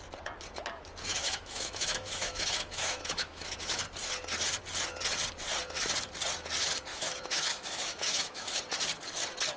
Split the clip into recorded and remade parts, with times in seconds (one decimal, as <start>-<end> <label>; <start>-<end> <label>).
0.0-1.1 recorded; 1.1-3.8 remade; 3.8-6.9 recorded; 6.9-8.6 remade; 8.6-9.6 recorded